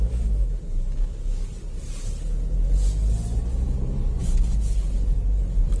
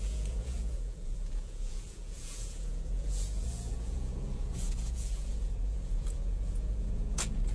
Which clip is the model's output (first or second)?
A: second